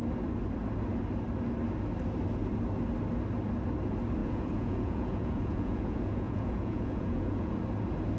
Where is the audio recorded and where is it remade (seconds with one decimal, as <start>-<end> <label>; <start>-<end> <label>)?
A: 0.0-4.2 recorded; 4.2-7.5 remade; 7.5-8.2 recorded